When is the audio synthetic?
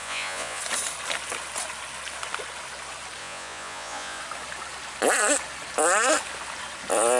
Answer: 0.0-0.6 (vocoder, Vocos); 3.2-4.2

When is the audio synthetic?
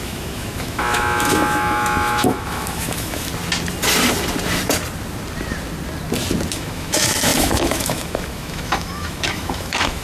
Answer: 0.0-3.3 (autoencoder, DAC-VAE); 6.5-10.0